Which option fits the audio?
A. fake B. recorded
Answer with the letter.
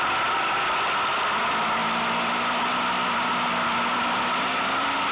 B